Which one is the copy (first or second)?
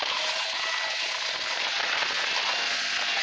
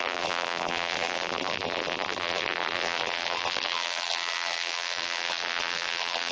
second